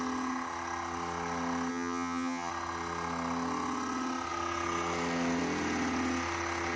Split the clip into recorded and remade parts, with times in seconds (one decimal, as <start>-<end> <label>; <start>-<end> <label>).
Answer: 0.0-1.7 recorded; 1.7-2.5 remade; 2.5-6.8 recorded

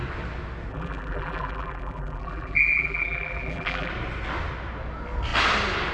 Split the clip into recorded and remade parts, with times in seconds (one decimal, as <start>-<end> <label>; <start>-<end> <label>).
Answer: 0.0-0.7 recorded; 0.7-3.9 remade; 3.9-5.9 recorded

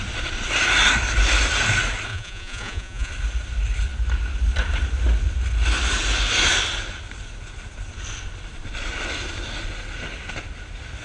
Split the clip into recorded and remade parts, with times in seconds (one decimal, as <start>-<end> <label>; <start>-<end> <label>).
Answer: 0.0-2.1 recorded; 2.1-3.1 remade; 3.1-11.0 recorded

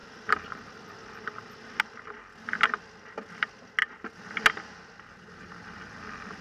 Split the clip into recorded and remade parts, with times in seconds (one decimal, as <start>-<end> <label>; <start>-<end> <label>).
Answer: 0.0-6.4 recorded

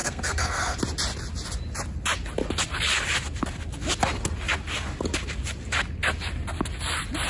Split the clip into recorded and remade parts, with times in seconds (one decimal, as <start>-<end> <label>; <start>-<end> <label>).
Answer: 0.0-0.8 remade; 0.8-7.3 recorded

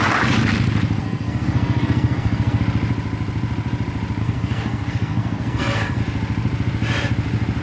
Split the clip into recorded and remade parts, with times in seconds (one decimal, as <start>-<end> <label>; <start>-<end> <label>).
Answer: 0.0-1.0 recorded; 1.0-2.6 remade; 2.6-4.2 recorded; 4.2-6.0 remade; 6.0-7.6 recorded

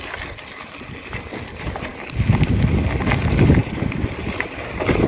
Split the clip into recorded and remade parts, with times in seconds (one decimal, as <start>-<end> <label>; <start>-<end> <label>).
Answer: 0.0-1.9 recorded; 1.9-3.0 remade; 3.0-5.1 recorded

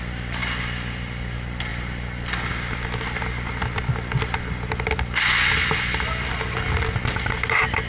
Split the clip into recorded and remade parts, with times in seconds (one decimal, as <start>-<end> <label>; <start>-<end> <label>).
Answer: 0.0-7.9 recorded